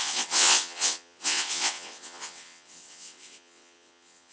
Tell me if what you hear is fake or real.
fake